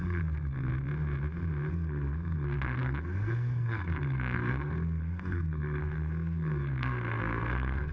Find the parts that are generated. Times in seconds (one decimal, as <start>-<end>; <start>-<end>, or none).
0.0-0.7; 1.7-7.9